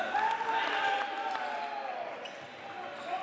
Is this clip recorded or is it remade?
recorded